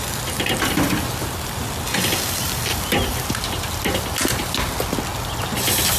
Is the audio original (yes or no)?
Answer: yes